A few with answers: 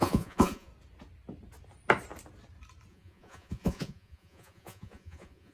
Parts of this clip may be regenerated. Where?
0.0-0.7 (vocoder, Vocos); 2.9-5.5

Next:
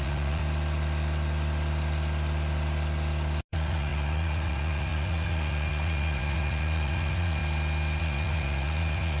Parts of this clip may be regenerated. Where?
0.0-0.4 (vocoder, Vocos); 3.5-7.4; 8.0-9.2

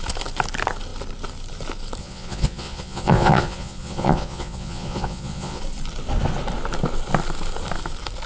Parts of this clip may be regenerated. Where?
2.0-5.6 (vocoder, Vocos)

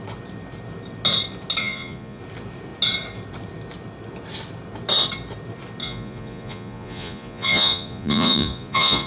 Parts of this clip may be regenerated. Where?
1.6-2.2 (vocoder, Vocos); 5.8-9.1

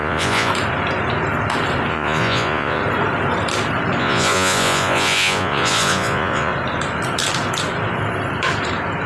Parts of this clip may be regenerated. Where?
0.0-0.5 (vocoder, Vocos); 1.9-2.8; 4.0-6.5

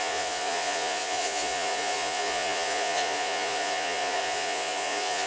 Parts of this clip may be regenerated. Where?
0.0-5.3 (vocoder, Vocos)